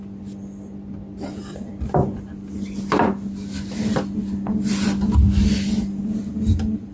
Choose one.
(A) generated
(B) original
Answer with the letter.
B